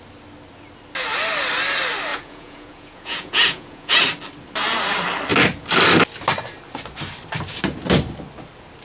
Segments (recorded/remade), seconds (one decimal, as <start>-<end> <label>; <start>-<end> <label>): 0.0-2.1 recorded; 2.1-4.0 remade; 4.0-8.8 recorded